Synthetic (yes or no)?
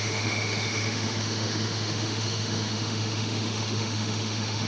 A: yes